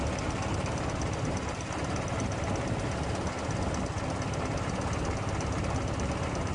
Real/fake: real